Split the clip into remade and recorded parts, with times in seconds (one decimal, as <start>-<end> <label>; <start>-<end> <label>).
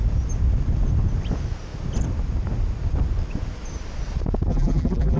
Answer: 0.0-4.5 recorded; 4.5-5.2 remade